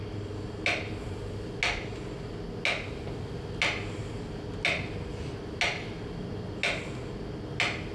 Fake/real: real